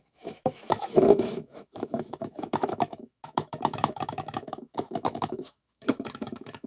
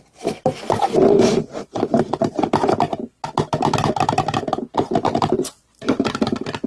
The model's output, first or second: first